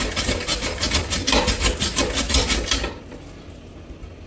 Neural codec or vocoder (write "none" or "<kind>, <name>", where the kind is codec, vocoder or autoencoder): none